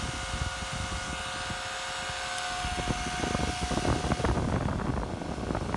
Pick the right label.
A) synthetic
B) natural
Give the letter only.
B